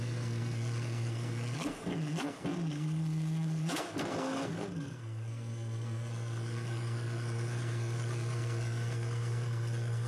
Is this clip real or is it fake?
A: fake